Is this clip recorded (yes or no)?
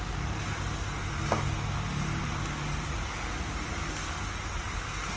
yes